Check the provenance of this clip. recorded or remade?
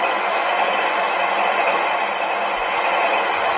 remade